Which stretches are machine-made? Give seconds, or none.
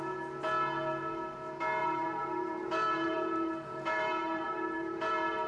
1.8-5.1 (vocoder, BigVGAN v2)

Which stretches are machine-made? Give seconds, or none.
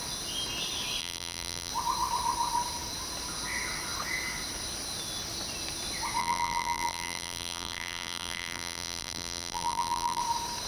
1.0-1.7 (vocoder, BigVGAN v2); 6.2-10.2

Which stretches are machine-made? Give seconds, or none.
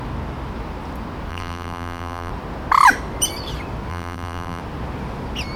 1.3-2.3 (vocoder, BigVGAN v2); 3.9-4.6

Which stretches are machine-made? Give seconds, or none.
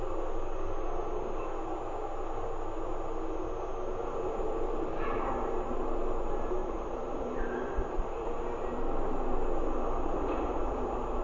4.0-5.3 (vocoder, BigVGAN v2); 6.6-8.4